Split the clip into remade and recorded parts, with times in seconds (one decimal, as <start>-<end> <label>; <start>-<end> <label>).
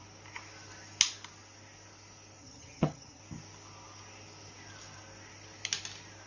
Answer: 0.0-2.4 recorded; 2.4-3.2 remade; 3.2-6.3 recorded